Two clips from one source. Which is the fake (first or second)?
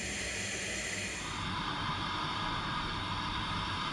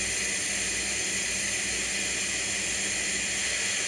first